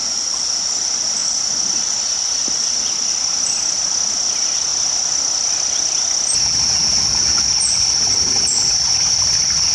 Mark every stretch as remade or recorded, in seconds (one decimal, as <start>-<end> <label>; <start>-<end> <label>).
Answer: 0.0-9.7 recorded